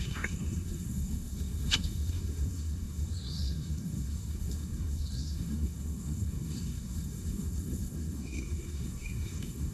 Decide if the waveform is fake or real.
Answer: fake